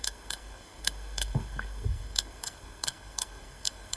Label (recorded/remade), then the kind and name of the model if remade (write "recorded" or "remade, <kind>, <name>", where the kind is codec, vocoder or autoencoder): remade, codec, SNAC